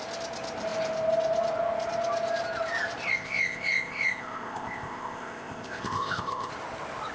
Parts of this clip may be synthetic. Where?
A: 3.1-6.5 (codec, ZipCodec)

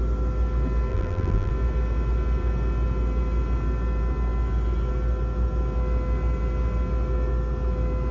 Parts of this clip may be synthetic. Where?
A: 0.9-1.5 (vocoder, BigVGAN v2)

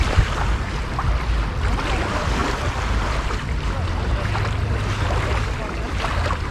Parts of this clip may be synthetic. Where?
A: none

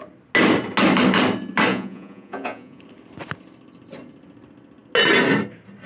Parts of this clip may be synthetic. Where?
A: 1.7-2.8 (vocoder, Vocos)

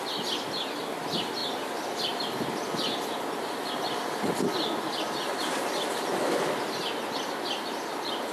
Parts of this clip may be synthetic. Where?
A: none

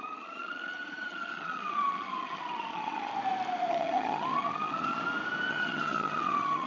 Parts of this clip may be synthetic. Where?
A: 0.0-3.1 (vocoder, HiFi-GAN); 3.7-5.0; 5.5-6.7